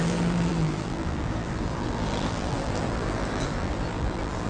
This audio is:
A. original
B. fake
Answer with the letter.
B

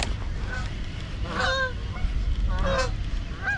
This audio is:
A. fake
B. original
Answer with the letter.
B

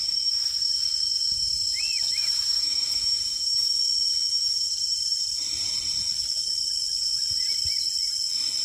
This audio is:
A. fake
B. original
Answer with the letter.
A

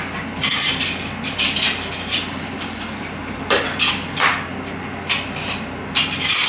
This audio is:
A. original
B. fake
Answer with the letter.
A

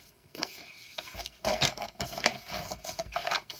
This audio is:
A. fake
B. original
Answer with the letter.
A